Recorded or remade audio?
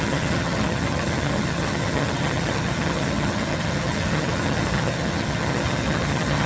remade